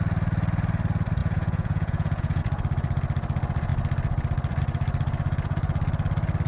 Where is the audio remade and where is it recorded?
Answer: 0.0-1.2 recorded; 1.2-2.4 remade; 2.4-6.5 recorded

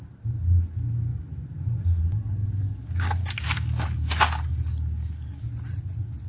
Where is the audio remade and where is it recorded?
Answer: 0.0-6.3 recorded

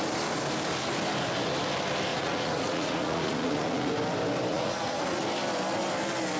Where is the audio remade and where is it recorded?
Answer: 0.0-2.1 recorded; 2.1-3.9 remade; 3.9-4.5 recorded; 4.5-5.2 remade; 5.2-6.4 recorded

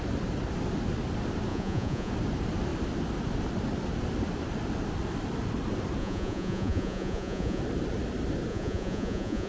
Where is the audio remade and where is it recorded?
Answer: 0.0-1.5 recorded; 1.5-2.1 remade; 2.1-6.0 recorded; 6.0-7.6 remade; 7.6-8.5 recorded; 8.5-9.5 remade

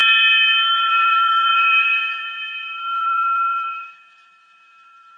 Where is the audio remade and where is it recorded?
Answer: 0.0-0.7 recorded; 0.7-5.2 remade

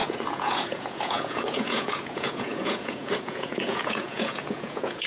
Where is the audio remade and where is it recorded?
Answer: 0.0-5.1 remade